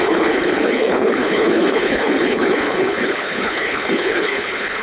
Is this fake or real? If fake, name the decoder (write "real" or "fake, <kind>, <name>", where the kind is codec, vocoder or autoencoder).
fake, codec, HILCodec